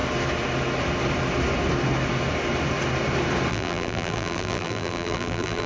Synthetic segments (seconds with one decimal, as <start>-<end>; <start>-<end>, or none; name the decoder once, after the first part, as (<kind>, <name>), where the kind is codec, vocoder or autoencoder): 3.5-5.7 (vocoder, BigVGAN v2)